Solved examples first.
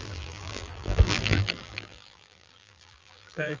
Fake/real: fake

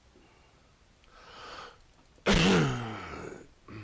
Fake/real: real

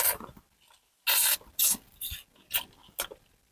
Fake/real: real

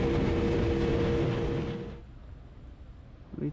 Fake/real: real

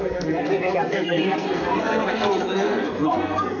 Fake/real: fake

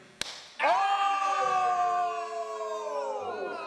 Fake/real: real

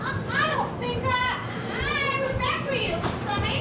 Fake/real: fake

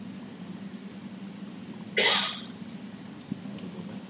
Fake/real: real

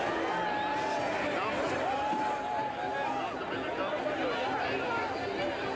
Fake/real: real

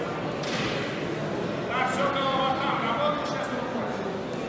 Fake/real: real